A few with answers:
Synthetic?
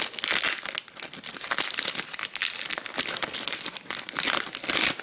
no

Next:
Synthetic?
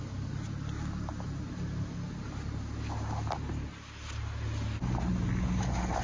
no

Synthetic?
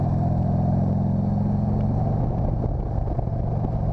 no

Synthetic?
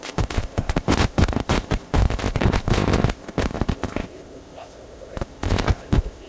yes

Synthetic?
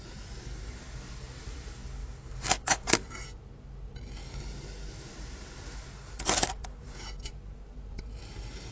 no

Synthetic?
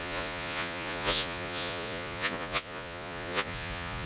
yes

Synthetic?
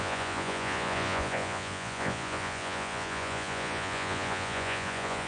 yes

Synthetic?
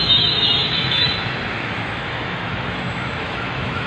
yes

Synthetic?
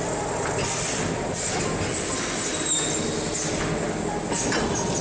no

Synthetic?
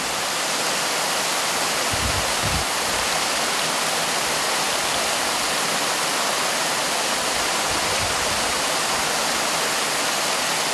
no